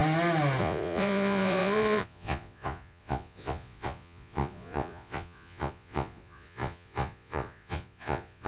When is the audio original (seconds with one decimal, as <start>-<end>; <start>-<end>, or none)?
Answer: 0.0-0.6

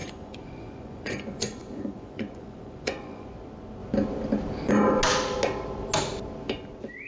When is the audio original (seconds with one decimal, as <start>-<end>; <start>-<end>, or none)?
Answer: 3.3-7.1

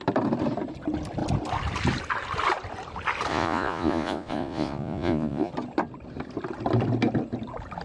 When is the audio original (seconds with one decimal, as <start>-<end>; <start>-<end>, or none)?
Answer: 0.0-3.3; 5.5-7.8

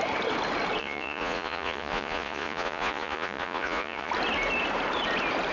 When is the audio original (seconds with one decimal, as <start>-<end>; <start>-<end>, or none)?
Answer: 0.0-0.8; 4.1-5.5

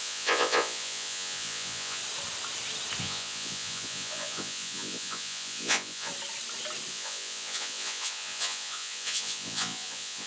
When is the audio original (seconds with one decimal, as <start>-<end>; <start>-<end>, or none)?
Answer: 2.0-3.0; 6.1-6.9